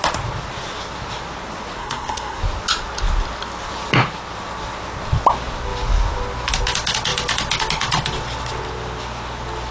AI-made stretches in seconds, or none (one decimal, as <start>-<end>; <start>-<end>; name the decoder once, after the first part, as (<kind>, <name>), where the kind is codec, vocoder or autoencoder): 1.8-2.4 (codec, SNAC)